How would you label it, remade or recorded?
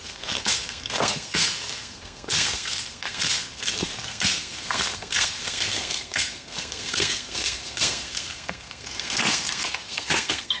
remade